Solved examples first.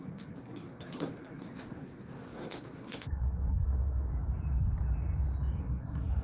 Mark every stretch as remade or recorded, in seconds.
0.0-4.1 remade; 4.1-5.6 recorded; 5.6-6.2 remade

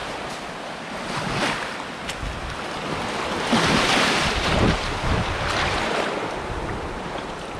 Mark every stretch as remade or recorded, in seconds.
0.0-7.6 recorded

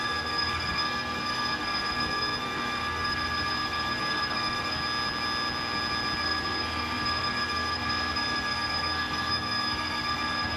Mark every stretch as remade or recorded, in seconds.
0.0-4.8 remade; 4.8-6.2 recorded; 6.2-10.6 remade

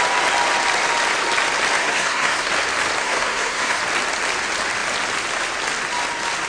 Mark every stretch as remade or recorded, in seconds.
0.0-1.8 recorded; 1.8-2.5 remade; 2.5-3.0 recorded; 3.0-3.8 remade; 3.8-6.5 recorded

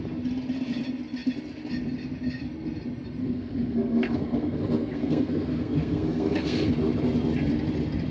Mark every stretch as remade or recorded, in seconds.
0.0-3.2 recorded; 3.2-6.7 remade; 6.7-8.1 recorded

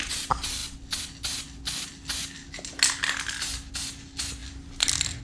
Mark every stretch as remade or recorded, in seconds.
0.0-5.2 recorded

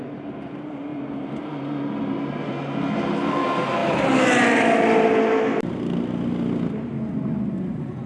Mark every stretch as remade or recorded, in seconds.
0.0-8.1 recorded

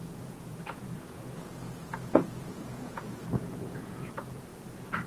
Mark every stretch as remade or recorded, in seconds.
0.0-4.5 remade; 4.5-5.1 recorded